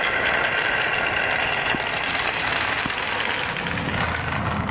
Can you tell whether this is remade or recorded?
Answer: recorded